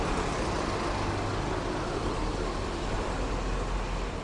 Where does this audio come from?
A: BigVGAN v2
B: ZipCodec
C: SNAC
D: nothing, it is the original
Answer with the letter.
D